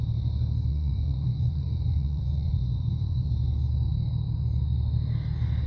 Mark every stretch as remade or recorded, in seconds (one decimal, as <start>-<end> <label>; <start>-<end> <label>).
0.0-0.7 recorded; 0.7-3.3 remade; 3.3-5.7 recorded

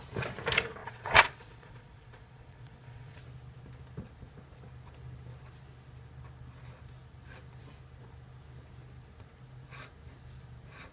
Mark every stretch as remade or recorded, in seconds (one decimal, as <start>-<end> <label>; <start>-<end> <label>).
0.0-0.8 recorded; 0.8-3.2 remade; 3.2-10.9 recorded

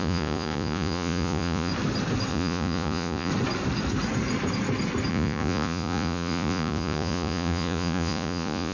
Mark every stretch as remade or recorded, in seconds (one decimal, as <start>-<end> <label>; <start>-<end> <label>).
0.0-1.7 remade; 1.7-2.3 recorded; 2.3-3.3 remade; 3.3-5.1 recorded; 5.1-8.7 remade

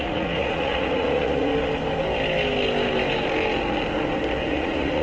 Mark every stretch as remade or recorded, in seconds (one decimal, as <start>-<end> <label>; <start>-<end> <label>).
0.0-1.5 remade; 1.5-4.5 recorded; 4.5-5.0 remade